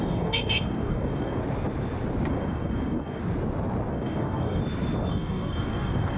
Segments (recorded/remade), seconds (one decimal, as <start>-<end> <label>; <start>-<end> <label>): 0.0-1.4 remade; 1.4-2.3 recorded; 2.3-3.2 remade; 3.2-3.9 recorded; 3.9-4.6 remade; 4.6-5.1 recorded; 5.1-6.2 remade